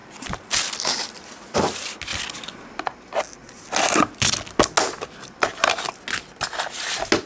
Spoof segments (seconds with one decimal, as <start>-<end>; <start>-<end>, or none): 0.0-1.6; 3.4-4.3